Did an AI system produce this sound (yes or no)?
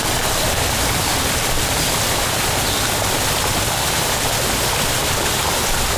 no